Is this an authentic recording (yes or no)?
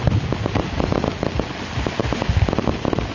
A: yes